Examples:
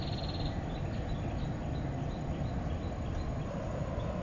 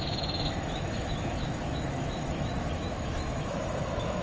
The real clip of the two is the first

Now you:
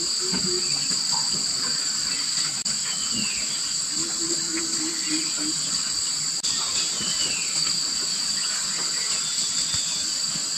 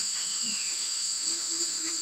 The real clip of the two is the first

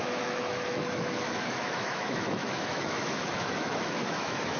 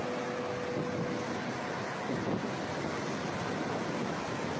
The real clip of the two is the second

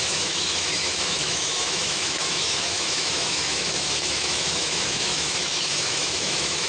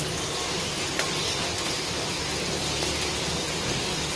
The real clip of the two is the second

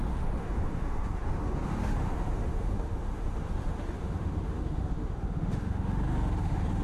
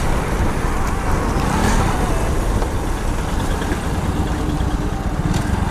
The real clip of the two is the second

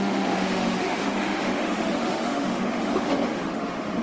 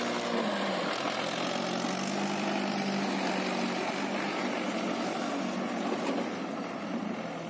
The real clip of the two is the second